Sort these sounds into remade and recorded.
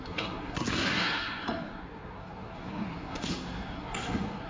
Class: remade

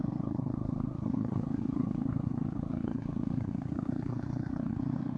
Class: remade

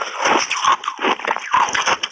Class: recorded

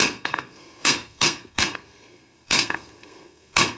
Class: remade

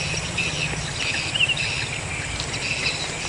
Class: recorded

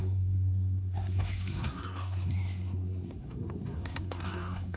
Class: remade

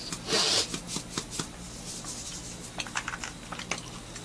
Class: recorded